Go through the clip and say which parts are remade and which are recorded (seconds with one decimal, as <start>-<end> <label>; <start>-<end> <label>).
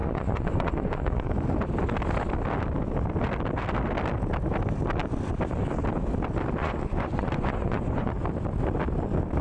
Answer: 0.0-1.3 remade; 1.3-6.6 recorded; 6.6-8.1 remade; 8.1-9.4 recorded